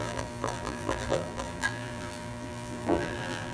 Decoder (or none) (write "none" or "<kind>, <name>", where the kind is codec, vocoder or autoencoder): vocoder, BigVGAN v2